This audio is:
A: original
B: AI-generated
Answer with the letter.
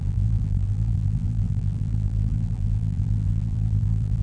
B